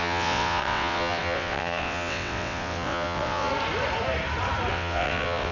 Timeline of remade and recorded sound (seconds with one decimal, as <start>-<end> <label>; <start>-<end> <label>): 0.0-3.5 remade; 3.5-4.7 recorded; 4.7-5.5 remade